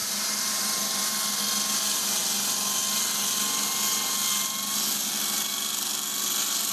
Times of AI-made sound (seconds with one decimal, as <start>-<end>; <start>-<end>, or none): 0.0-1.4